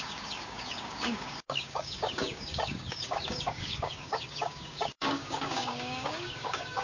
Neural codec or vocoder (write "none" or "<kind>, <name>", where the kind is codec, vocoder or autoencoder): codec, DAC